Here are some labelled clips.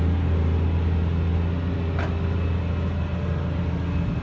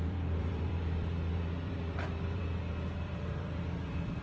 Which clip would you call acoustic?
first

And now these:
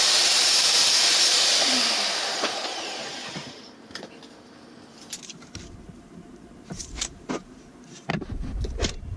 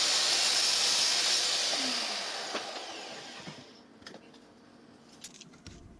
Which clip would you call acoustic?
second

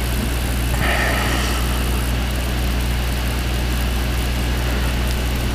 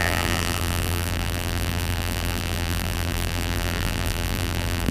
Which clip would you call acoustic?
first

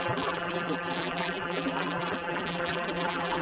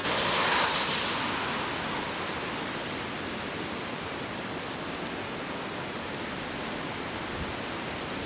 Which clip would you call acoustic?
second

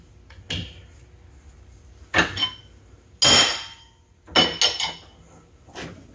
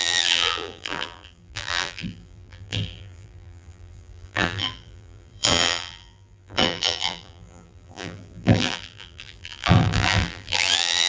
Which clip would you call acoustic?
first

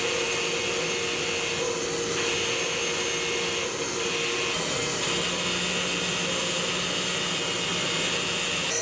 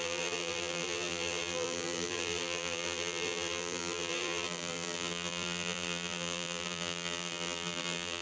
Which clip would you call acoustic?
first